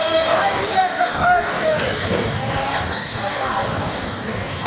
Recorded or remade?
remade